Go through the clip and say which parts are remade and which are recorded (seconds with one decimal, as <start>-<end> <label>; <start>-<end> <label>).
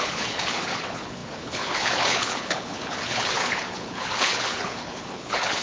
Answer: 0.0-5.6 remade